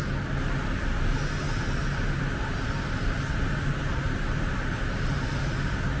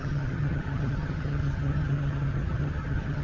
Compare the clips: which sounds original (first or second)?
first